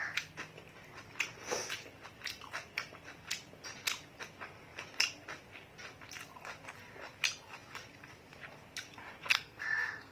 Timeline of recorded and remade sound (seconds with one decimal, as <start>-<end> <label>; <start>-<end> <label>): 0.0-9.3 recorded; 9.3-10.1 remade